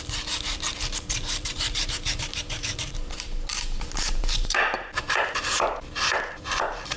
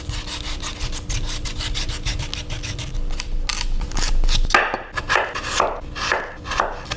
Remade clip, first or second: first